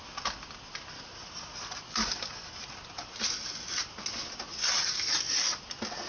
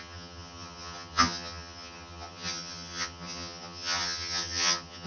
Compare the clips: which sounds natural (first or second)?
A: first